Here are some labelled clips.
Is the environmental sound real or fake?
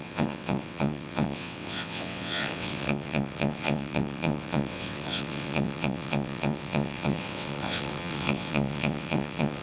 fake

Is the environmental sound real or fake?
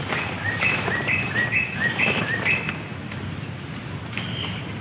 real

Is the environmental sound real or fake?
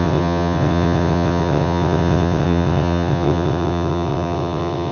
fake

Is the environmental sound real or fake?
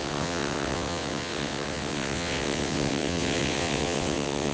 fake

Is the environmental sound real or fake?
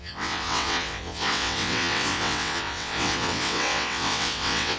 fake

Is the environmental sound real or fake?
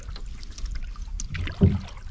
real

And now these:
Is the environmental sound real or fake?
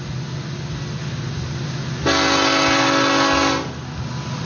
real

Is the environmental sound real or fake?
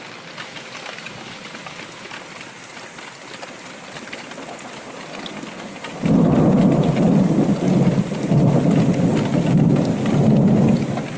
real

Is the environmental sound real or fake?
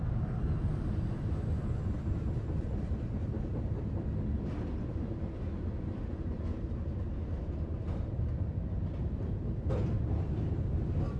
real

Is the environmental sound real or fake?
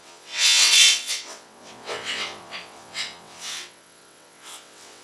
fake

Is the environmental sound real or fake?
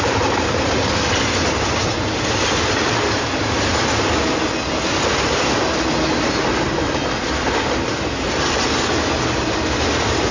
real